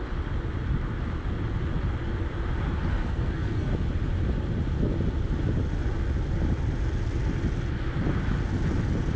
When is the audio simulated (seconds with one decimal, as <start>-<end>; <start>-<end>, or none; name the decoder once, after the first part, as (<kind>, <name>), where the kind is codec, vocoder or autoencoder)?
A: 2.9-3.7 (codec, SNAC)